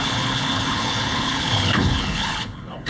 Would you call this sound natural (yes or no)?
no